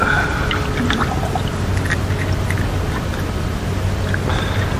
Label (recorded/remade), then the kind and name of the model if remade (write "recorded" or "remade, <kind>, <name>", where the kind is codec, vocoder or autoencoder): recorded